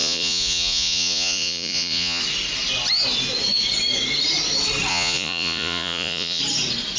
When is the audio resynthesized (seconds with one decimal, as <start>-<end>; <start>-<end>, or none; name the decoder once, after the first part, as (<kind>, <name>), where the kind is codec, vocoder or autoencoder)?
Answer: 0.0-2.2 (vocoder, Vocos); 4.9-6.4